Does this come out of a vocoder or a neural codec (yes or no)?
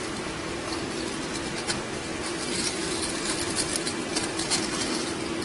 no